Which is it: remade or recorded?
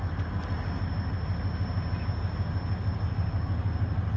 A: recorded